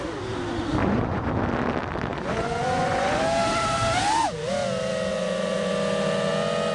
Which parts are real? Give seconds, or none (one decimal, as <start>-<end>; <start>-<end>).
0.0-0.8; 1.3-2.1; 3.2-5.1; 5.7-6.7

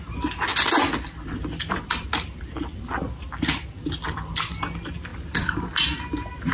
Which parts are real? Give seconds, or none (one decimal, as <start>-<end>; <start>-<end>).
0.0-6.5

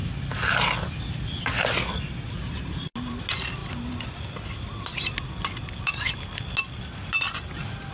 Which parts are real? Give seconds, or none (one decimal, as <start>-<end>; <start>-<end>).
0.0-7.9